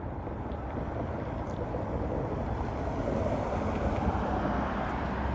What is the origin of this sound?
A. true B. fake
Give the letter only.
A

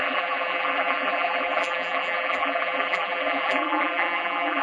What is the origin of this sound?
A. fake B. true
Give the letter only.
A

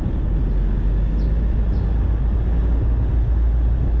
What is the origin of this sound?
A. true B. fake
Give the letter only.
A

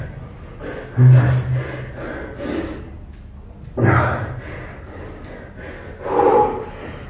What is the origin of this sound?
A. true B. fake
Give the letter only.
A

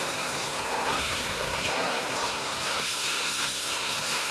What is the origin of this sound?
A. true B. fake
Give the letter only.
B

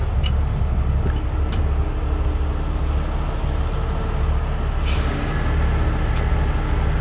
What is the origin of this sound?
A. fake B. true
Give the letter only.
B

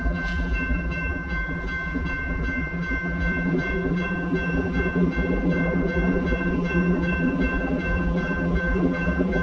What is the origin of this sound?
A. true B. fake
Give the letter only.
B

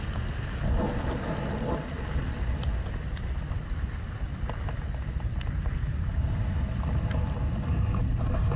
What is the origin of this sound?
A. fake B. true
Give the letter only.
B